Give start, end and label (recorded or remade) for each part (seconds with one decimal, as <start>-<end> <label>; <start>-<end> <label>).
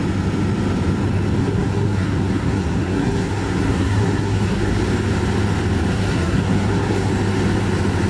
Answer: 0.0-1.4 recorded; 1.4-4.7 remade; 4.7-5.9 recorded; 5.9-7.1 remade; 7.1-8.1 recorded